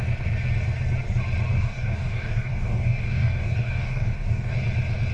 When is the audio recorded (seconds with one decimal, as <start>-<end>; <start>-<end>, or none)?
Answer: 0.0-1.5; 4.6-5.1